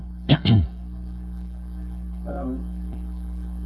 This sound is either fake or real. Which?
fake